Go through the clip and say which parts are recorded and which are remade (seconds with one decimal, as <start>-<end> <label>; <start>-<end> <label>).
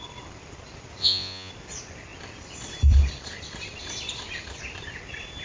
0.0-1.0 recorded; 1.0-1.5 remade; 1.5-5.4 recorded